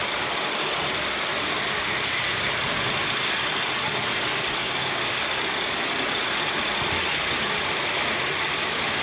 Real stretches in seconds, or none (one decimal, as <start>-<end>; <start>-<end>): 0.0-4.6; 5.2-9.0